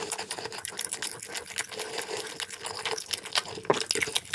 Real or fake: real